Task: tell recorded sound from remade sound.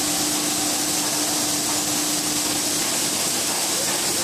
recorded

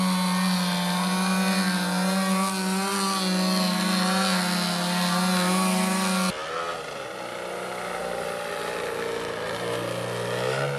recorded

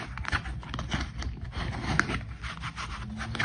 recorded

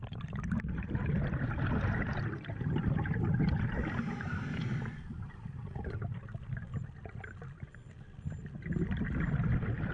recorded